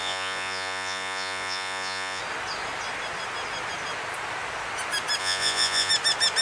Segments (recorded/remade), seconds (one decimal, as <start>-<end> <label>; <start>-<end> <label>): 0.0-2.2 remade; 2.2-5.2 recorded; 5.2-5.9 remade; 5.9-6.4 recorded

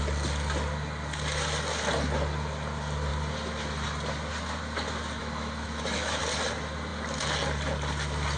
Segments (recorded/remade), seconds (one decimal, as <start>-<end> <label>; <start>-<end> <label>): 0.0-5.2 recorded; 5.2-6.2 remade; 6.2-8.4 recorded